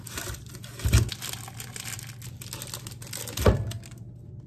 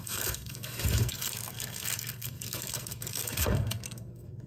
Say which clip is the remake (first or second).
second